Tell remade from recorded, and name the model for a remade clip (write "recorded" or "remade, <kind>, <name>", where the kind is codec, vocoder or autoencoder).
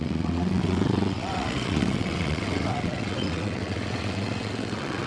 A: remade, vocoder, WaveNeXt